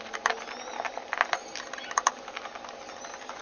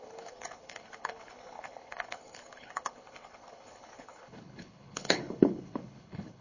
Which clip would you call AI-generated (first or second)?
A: second